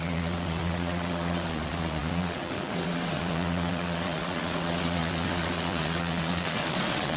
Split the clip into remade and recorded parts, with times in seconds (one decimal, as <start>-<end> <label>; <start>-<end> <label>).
0.0-7.2 remade